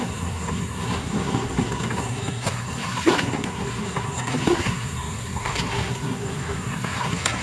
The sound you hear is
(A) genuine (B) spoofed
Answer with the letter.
B